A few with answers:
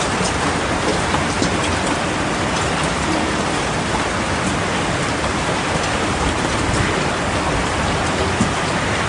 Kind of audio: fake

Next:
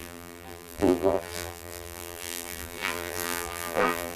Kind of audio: fake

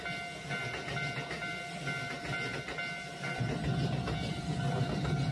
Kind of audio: real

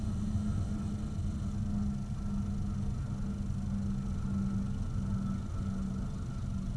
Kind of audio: real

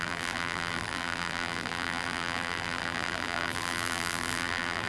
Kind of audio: fake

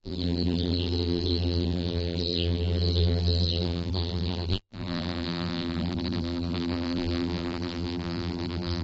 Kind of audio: fake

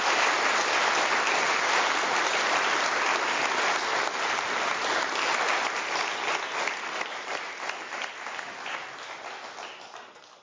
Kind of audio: real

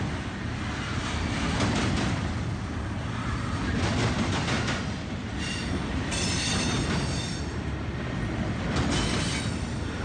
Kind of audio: real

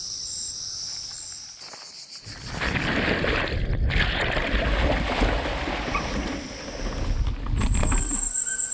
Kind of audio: real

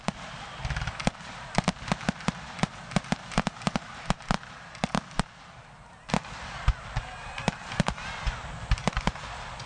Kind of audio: real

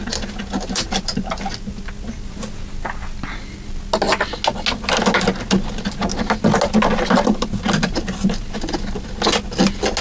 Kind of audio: real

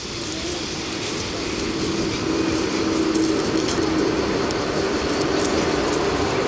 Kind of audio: real